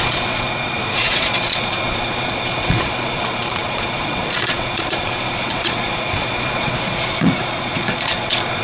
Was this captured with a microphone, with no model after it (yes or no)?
no